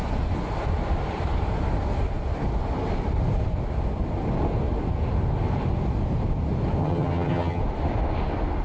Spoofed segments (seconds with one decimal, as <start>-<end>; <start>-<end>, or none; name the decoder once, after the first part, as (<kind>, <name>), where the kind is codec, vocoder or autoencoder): 6.8-7.6 (vocoder, HiFi-GAN)